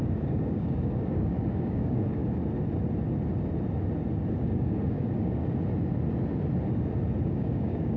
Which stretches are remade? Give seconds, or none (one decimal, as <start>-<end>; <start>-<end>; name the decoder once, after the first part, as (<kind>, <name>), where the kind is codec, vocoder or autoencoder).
0.0-2.2 (codec, DAC); 4.3-5.4; 7.3-8.0